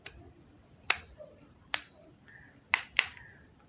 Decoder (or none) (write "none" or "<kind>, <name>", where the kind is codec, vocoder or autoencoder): vocoder, BigVGAN v2